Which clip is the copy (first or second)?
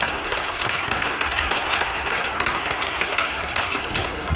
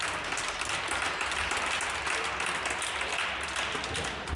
first